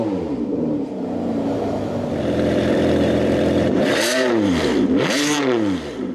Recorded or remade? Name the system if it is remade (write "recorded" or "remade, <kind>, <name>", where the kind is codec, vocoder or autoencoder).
remade, vocoder, BigVGAN v2